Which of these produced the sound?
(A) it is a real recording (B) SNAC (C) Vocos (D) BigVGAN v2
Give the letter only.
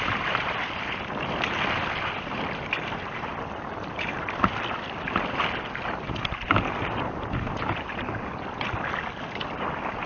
A